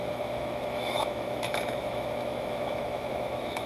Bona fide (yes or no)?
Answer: no